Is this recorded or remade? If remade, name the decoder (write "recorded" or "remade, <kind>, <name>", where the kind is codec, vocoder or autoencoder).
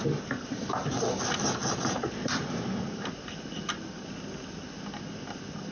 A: recorded